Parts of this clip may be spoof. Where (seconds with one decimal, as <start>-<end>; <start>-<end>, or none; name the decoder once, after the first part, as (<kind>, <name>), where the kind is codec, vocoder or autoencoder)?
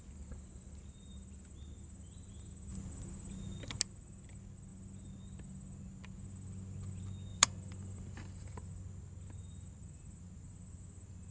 7.3-8.6 (vocoder, BigVGAN v2)